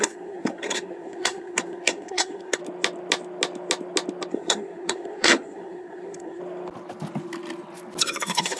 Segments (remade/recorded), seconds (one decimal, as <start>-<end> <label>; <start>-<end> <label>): 0.0-2.6 remade; 2.6-4.3 recorded; 4.3-6.4 remade; 6.4-8.0 recorded; 8.0-8.6 remade